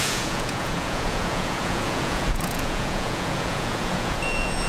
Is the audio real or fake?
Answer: fake